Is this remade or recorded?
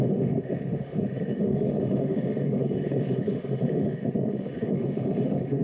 remade